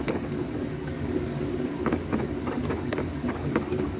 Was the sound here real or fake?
fake